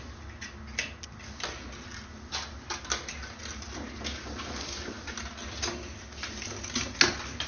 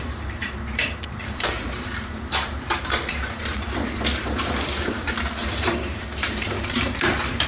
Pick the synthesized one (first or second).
second